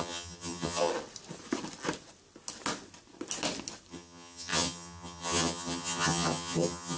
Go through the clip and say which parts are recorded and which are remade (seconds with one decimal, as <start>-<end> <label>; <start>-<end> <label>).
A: 0.0-0.9 remade; 0.9-3.9 recorded; 3.9-7.0 remade